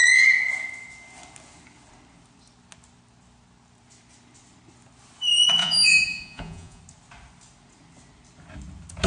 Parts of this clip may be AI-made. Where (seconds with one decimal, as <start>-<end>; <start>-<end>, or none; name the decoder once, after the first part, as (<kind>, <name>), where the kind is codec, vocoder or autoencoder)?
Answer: 5.6-6.8 (vocoder, Vocos)